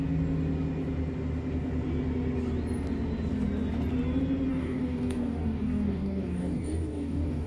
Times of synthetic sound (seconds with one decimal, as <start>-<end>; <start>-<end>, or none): 4.5-7.5